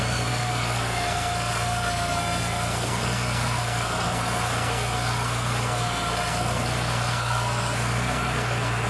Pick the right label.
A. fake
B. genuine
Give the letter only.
A